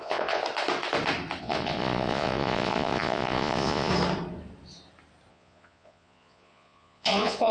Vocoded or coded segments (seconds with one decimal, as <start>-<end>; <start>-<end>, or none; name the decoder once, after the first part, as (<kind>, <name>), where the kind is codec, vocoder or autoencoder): 0.0-0.4 (vocoder, Vocos); 1.4-3.9; 5.3-7.5